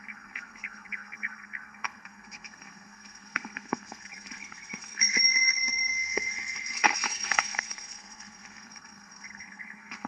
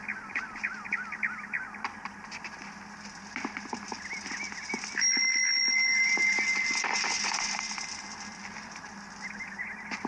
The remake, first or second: first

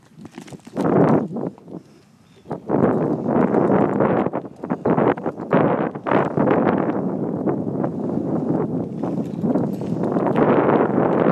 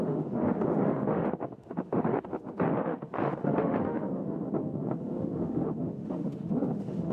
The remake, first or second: second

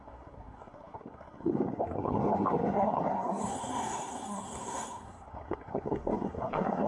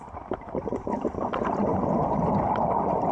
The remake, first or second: first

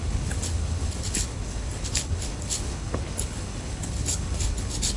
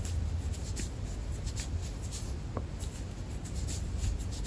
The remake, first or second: first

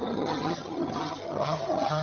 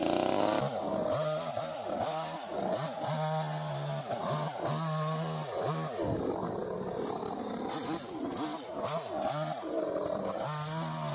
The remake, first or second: first